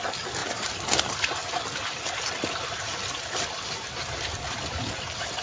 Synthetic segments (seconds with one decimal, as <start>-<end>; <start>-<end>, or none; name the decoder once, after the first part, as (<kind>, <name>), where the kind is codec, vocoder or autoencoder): 0.0-0.4 (vocoder, BigVGAN v2); 1.0-1.4; 2.5-5.4